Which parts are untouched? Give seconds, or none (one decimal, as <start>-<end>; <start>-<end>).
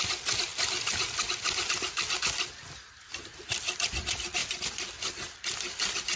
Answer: 0.0-6.2